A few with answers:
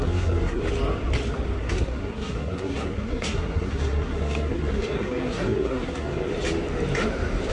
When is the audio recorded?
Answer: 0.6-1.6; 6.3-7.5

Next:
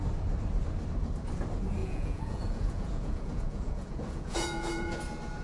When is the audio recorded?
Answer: 0.0-1.8; 5.0-5.4

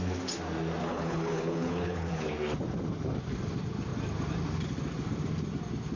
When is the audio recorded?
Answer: 0.0-0.8; 2.3-6.0

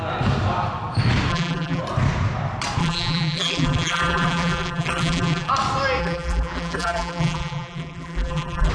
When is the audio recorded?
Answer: 0.0-1.3; 1.8-2.8; 5.5-6.0

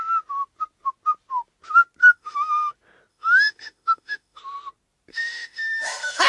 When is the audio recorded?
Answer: 0.0-2.0; 2.7-3.1; 4.4-5.1

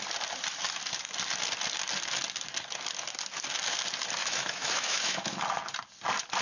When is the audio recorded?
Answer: 0.0-4.2; 5.4-6.4

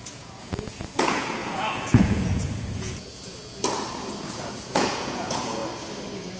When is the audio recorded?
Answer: 3.1-4.2; 5.6-6.4

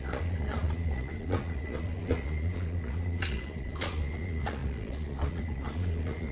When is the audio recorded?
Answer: none